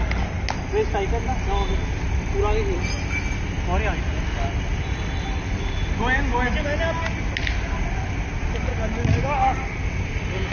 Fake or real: real